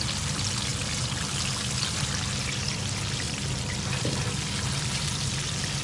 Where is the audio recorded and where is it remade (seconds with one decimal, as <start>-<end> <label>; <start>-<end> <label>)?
0.0-5.8 recorded